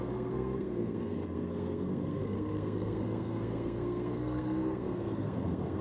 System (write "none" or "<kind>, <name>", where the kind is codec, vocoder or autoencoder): codec, SNAC